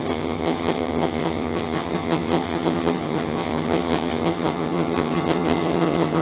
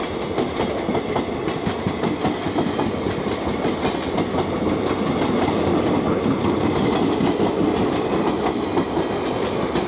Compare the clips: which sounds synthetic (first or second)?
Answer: first